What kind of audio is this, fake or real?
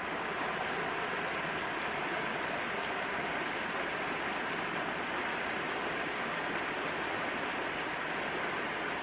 real